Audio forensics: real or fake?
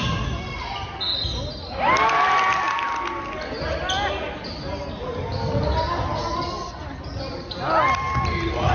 real